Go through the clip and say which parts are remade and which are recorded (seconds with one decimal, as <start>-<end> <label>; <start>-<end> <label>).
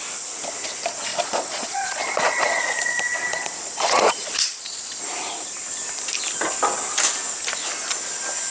0.0-1.1 recorded; 1.1-2.6 remade; 2.6-3.3 recorded; 3.3-5.0 remade; 5.0-8.5 recorded